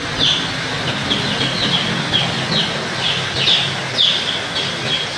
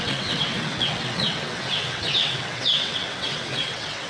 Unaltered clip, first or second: first